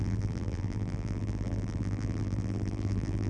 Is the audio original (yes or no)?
no